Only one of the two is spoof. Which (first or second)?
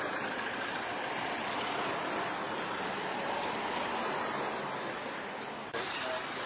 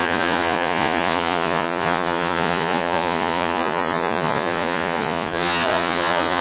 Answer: second